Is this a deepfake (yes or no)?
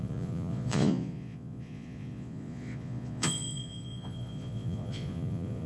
yes